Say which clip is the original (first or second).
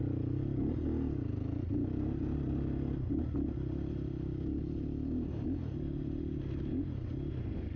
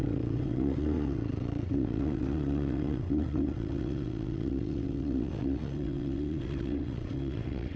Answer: first